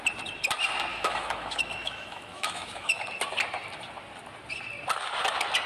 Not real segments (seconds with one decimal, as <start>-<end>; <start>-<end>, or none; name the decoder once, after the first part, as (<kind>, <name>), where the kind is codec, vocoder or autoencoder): 0.9-3.0 (autoencoder, DAC-VAE)